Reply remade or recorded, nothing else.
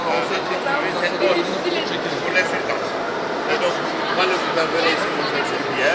recorded